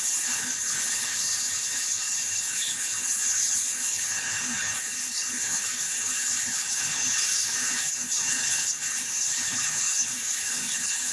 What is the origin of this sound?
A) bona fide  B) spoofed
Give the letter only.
B